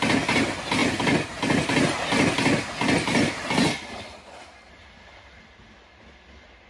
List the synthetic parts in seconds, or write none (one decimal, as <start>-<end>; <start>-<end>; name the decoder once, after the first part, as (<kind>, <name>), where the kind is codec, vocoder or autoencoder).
none